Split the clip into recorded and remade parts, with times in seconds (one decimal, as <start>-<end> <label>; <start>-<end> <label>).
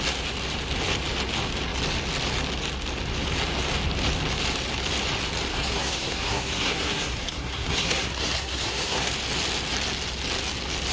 0.0-5.5 recorded; 5.5-9.1 remade; 9.1-10.9 recorded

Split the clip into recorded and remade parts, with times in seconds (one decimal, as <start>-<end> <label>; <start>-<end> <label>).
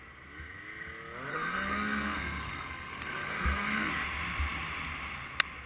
0.0-1.3 recorded; 1.3-3.9 remade; 3.9-5.7 recorded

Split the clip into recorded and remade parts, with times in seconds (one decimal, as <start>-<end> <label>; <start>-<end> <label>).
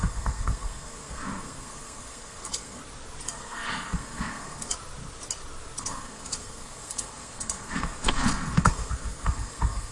0.0-2.8 remade; 2.8-3.3 recorded; 3.3-4.7 remade; 4.7-5.8 recorded; 5.8-9.9 remade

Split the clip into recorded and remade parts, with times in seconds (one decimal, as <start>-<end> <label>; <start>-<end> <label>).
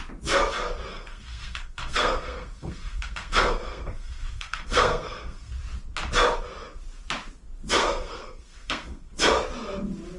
0.0-0.9 recorded; 0.9-5.5 remade; 5.5-7.8 recorded; 7.8-9.1 remade; 9.1-10.2 recorded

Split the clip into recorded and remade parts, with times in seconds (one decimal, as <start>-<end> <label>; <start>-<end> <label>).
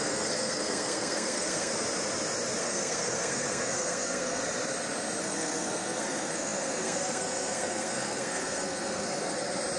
0.0-1.7 remade; 1.7-2.6 recorded; 2.6-4.4 remade; 4.4-5.2 recorded; 5.2-9.3 remade; 9.3-9.8 recorded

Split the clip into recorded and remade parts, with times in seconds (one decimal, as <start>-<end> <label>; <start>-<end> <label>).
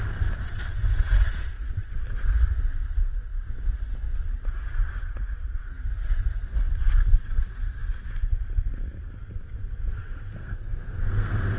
0.0-10.4 recorded; 10.4-11.6 remade